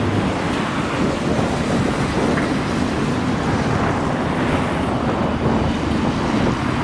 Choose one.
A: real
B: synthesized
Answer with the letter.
A